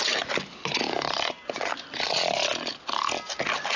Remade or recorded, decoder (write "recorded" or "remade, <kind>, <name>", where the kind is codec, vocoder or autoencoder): recorded